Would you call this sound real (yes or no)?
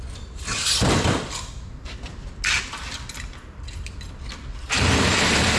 yes